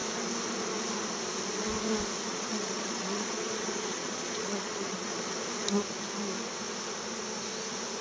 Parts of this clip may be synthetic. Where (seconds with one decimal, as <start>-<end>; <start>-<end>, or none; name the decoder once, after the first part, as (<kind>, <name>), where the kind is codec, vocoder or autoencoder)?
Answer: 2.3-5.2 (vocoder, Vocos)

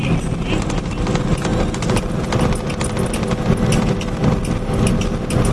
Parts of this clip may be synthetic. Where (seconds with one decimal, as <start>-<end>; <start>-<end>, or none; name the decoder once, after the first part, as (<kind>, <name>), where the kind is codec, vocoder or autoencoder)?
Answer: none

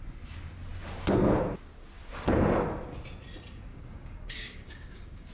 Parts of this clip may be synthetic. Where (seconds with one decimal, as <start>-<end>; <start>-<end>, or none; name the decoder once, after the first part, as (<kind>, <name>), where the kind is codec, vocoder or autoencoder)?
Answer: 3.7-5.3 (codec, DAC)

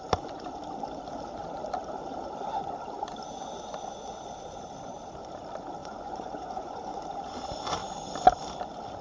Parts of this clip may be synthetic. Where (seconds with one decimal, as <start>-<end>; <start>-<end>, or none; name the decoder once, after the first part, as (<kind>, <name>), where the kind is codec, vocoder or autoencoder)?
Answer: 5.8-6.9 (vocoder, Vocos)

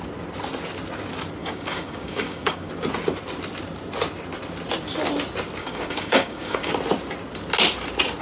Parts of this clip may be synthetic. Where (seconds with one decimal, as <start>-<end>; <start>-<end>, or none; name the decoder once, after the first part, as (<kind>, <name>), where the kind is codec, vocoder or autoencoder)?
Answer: 1.4-2.7 (codec, DAC); 5.6-6.7

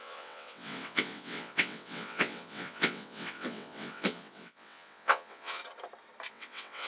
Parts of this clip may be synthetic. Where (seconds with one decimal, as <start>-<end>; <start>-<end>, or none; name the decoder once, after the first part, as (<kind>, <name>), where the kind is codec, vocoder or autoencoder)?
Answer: 0.0-5.6 (vocoder, WaveNeXt); 6.3-6.9

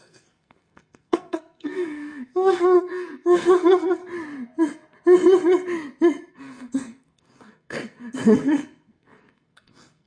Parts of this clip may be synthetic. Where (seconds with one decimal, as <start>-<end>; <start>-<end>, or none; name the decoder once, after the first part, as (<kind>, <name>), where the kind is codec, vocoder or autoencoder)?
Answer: 0.0-4.0 (codec, SNAC); 6.3-10.1